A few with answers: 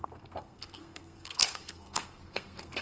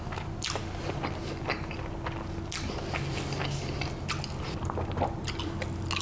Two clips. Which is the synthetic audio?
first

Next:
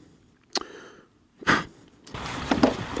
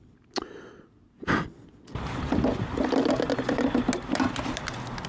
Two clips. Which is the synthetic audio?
first